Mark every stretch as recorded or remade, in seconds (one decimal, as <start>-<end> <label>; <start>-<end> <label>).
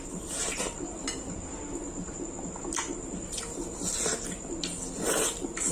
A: 0.0-5.7 recorded